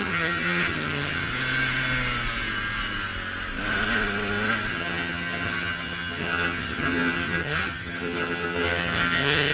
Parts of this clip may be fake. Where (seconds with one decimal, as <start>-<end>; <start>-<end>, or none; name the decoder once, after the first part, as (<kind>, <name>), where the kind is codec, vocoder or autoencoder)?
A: 0.0-1.3 (vocoder, HiFi-GAN); 4.7-9.5